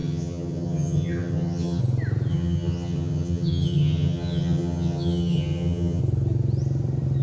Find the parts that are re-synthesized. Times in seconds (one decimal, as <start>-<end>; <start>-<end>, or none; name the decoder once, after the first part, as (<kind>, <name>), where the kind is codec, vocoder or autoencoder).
0.0-1.8 (vocoder, HiFi-GAN); 2.3-6.0